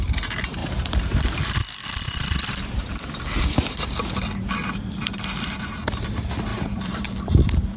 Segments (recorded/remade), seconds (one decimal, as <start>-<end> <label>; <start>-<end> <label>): 0.0-5.3 recorded; 5.3-5.8 remade; 5.8-6.5 recorded; 6.5-7.1 remade; 7.1-7.8 recorded